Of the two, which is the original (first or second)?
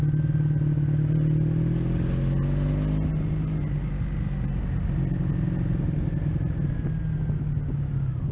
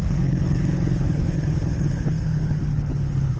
first